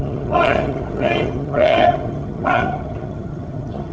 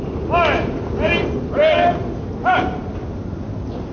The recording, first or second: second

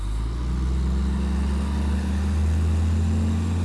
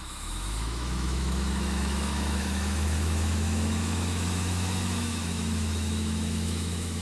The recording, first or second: first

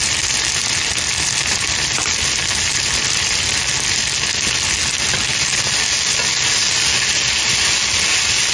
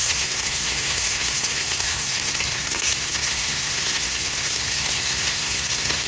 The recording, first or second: first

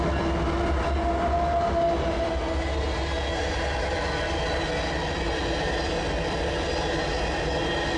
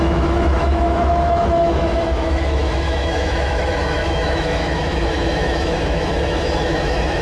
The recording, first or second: first